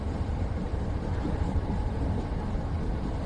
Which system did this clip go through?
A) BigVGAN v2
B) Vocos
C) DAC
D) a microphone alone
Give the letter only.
A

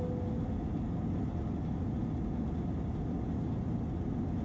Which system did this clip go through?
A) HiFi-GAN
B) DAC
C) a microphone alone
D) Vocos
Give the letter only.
C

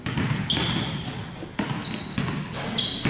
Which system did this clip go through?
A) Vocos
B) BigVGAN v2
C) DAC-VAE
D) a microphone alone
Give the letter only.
D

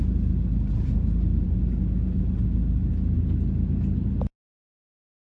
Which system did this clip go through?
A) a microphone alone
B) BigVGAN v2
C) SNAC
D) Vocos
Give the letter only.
A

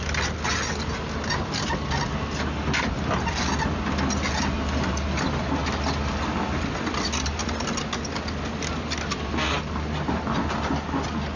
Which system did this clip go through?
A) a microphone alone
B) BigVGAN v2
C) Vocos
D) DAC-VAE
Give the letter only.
A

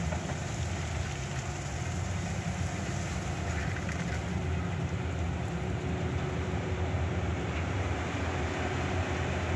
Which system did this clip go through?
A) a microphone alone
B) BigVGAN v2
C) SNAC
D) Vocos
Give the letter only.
A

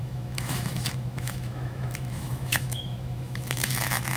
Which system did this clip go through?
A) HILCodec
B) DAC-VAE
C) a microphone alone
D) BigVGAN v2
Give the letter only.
B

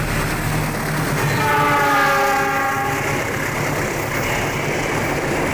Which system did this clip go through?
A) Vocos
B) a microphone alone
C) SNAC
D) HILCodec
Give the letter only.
B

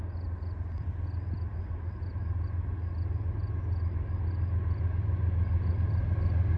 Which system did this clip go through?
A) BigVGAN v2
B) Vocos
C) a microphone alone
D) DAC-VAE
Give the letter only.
C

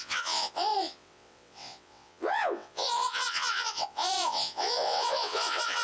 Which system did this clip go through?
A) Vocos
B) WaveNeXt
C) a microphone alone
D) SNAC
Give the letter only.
B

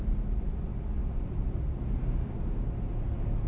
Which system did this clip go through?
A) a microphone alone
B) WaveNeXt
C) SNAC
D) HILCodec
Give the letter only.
A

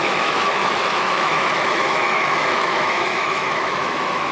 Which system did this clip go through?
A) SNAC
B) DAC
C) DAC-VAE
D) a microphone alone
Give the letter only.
C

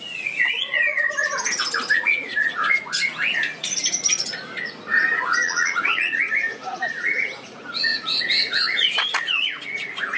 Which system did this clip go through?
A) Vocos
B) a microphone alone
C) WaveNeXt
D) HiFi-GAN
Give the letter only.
A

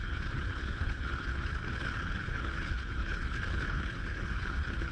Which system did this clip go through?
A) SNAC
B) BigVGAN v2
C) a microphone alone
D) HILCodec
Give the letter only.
D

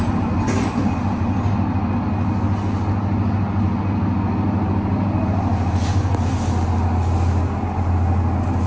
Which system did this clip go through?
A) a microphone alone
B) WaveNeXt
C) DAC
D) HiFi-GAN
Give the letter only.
A